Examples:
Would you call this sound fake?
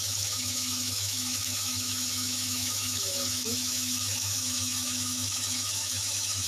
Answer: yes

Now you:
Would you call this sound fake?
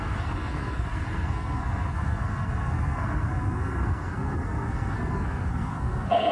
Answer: yes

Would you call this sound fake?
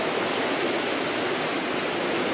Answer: no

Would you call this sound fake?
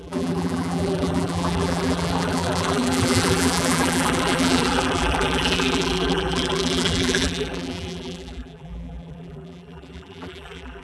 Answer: yes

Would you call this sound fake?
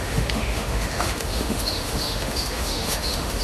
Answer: yes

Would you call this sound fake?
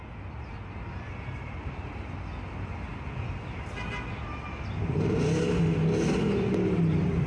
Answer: no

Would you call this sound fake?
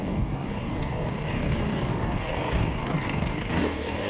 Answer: yes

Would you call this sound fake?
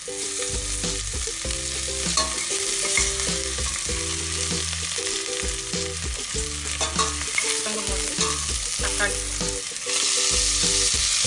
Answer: no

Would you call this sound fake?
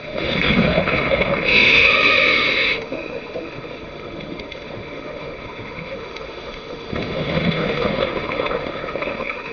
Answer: yes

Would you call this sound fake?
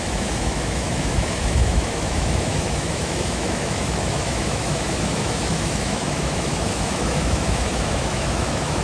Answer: yes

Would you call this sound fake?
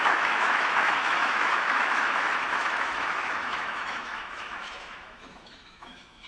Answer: yes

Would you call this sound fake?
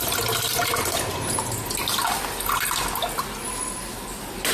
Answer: no